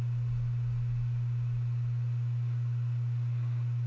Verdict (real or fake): real